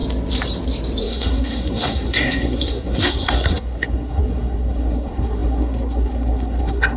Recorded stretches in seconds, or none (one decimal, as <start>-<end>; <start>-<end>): 0.0-1.0